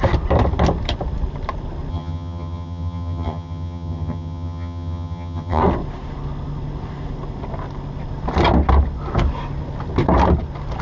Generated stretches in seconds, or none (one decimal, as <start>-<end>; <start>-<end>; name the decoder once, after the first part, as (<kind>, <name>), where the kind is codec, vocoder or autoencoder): 1.9-5.6 (vocoder, HiFi-GAN)